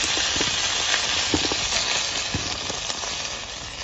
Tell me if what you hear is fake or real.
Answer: real